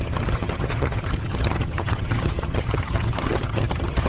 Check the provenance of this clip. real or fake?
fake